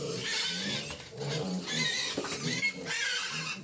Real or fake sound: real